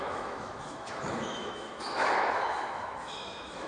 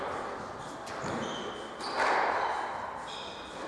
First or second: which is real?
second